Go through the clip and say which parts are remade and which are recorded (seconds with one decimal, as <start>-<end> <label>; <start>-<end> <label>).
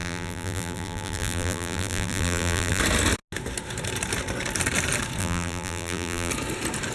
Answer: 0.0-2.8 remade; 2.8-5.2 recorded; 5.2-6.3 remade; 6.3-6.9 recorded